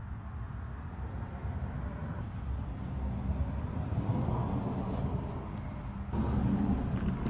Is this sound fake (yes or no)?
no